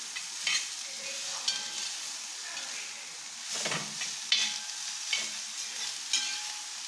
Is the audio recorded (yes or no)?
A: yes